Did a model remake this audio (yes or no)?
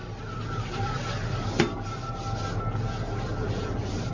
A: no